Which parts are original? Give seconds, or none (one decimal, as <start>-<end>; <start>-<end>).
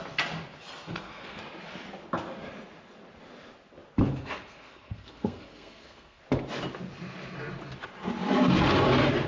0.0-0.9; 1.4-4.2; 6.2-9.3